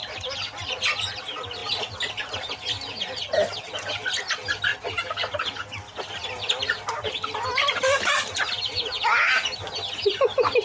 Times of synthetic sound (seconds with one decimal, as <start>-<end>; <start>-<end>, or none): none